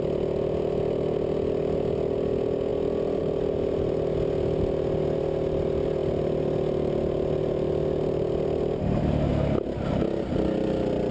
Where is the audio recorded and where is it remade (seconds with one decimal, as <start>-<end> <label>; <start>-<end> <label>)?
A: 0.0-11.1 recorded